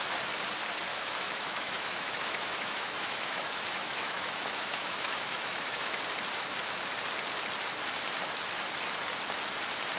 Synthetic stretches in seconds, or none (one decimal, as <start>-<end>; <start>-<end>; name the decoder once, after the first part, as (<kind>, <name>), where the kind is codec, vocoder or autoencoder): 0.9-6.0 (autoencoder, DAC-VAE)